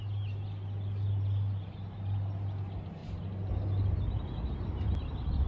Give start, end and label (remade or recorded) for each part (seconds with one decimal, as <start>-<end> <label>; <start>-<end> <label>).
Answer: 0.0-5.5 recorded